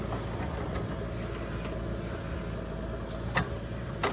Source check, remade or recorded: recorded